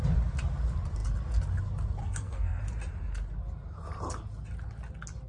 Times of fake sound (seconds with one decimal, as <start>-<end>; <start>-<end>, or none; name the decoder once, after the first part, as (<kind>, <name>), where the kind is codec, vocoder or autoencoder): 2.0-2.6 (codec, SNAC)